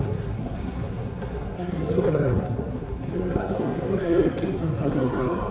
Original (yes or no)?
no